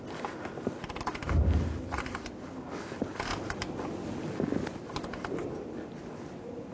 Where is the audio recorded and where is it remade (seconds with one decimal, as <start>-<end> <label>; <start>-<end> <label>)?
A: 0.0-3.3 recorded; 3.3-4.4 remade; 4.4-6.7 recorded